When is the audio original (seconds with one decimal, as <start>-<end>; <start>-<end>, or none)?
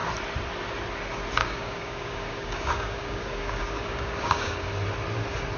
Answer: 0.0-1.4; 4.7-5.6